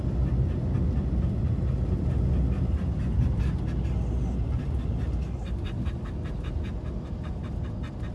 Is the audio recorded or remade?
recorded